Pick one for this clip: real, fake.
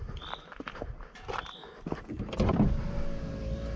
real